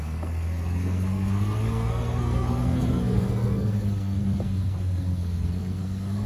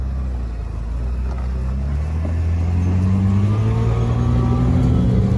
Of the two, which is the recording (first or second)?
second